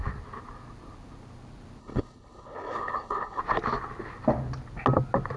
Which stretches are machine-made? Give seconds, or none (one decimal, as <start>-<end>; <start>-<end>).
1.8-3.4